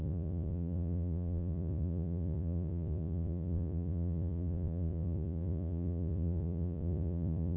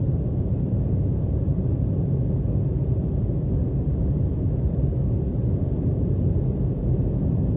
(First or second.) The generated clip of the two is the first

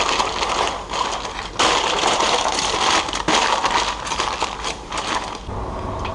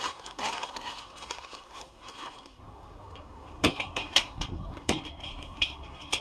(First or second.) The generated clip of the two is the second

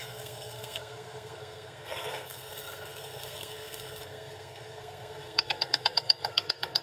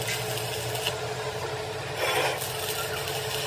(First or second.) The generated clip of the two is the first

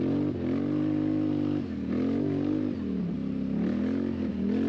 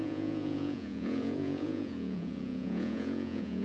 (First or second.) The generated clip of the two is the second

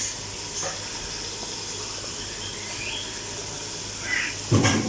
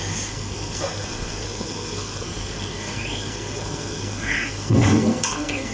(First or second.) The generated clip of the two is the second